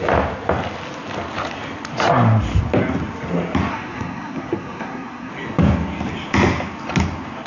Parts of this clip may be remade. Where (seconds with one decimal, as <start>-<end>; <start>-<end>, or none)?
3.7-5.3